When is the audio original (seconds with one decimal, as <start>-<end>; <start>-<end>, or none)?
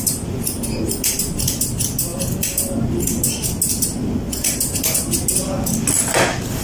0.0-6.6